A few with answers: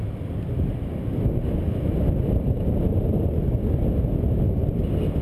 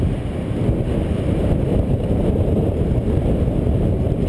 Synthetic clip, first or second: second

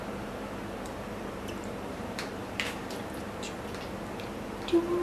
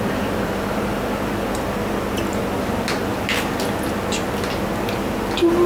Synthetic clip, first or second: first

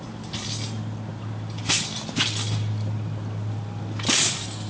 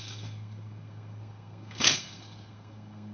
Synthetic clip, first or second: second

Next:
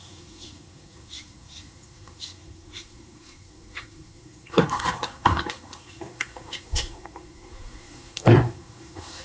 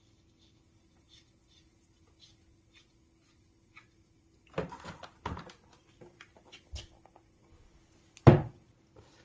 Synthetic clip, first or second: first